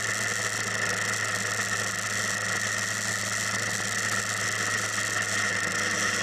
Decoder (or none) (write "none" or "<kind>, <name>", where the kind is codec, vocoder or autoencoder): none